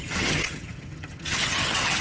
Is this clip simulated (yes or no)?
yes